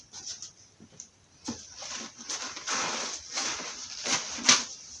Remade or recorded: recorded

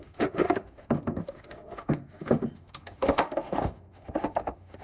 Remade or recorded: remade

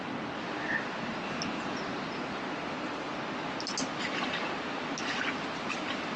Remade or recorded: recorded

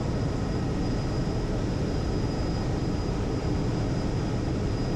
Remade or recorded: remade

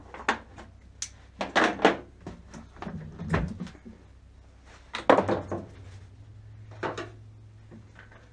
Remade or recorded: recorded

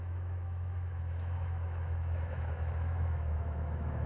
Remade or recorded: remade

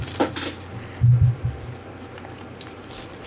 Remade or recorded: recorded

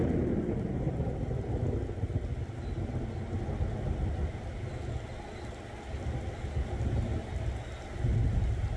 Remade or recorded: recorded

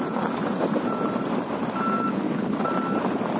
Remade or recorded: recorded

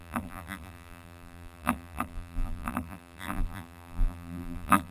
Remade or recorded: remade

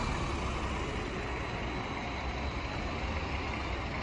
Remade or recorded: recorded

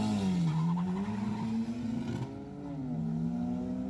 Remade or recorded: recorded